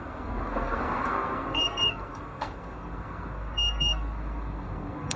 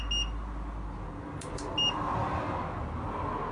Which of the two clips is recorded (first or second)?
second